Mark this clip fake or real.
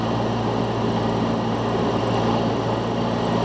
real